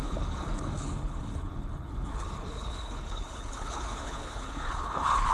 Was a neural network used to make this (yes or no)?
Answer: yes